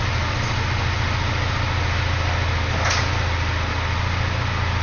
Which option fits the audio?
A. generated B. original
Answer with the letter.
B